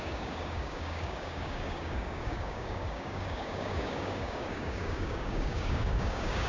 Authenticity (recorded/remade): remade